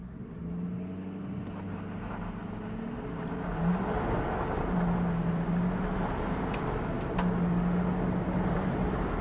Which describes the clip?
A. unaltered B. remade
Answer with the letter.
A